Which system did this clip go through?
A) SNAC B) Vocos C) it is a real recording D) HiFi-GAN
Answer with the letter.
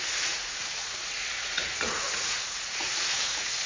B